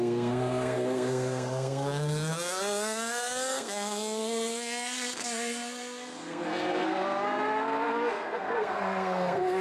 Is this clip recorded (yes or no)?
no